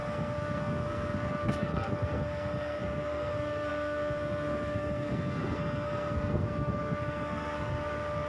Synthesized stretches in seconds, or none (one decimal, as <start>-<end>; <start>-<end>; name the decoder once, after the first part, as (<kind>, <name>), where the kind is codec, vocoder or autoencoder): 0.0-8.3 (codec, SNAC)